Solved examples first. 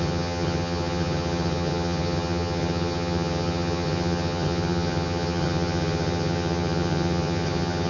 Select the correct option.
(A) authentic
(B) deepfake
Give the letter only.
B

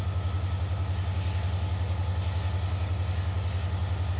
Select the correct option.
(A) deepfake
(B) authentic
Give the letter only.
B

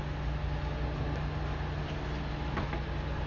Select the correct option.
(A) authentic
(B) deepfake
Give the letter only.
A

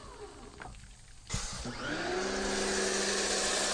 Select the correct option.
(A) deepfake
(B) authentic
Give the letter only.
B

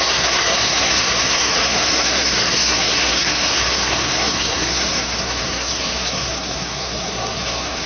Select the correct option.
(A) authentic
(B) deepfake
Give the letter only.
B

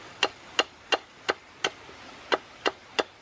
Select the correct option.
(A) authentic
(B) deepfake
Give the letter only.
A